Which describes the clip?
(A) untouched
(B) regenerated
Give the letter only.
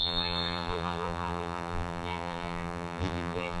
B